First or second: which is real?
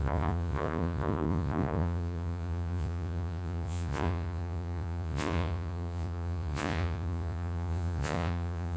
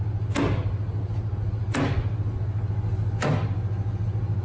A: second